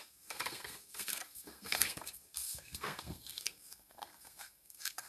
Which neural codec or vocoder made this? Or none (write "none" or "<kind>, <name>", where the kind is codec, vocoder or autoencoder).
codec, SNAC